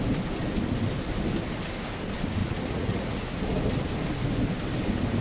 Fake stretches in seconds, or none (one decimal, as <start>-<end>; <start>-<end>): 2.4-3.3